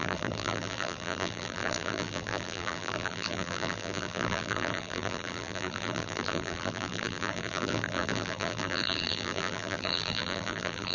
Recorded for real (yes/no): no